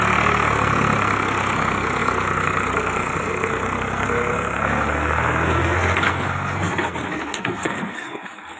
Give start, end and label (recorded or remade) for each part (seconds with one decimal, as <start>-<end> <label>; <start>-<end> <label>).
0.0-8.6 remade

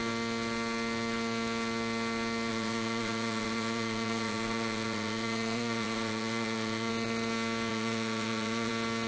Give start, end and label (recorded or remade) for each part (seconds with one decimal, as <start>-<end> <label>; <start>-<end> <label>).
0.0-2.5 recorded; 2.5-6.9 remade; 6.9-7.7 recorded; 7.7-8.7 remade; 8.7-9.1 recorded